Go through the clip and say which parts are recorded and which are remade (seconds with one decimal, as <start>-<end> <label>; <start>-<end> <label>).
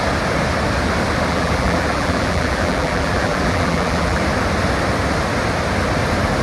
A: 0.0-1.3 recorded; 1.3-4.2 remade; 4.2-6.4 recorded